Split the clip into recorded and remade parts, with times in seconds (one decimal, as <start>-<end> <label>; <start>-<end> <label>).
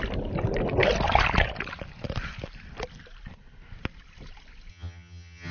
0.0-4.7 recorded; 4.7-5.5 remade